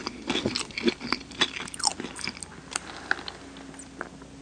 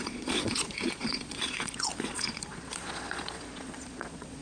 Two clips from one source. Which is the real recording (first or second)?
first